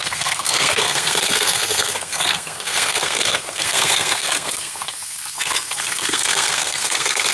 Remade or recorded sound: remade